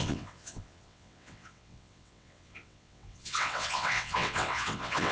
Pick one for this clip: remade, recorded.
remade